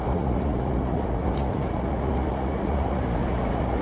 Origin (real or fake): fake